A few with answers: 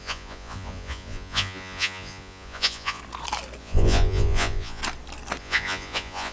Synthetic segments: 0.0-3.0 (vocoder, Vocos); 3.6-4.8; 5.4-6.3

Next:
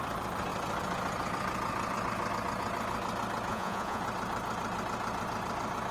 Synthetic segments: 3.5-4.0 (vocoder, Vocos)

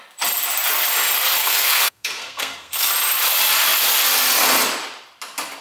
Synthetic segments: 1.4-2.9 (codec, SNAC)